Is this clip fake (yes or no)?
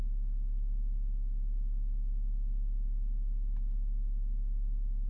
no